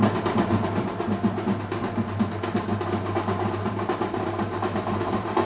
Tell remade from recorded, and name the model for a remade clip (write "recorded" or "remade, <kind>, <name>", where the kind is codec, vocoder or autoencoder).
recorded